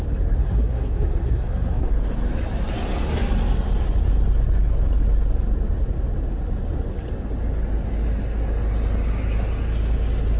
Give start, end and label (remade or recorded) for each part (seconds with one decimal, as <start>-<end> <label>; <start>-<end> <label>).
0.0-0.4 recorded; 0.4-1.9 remade; 1.9-10.4 recorded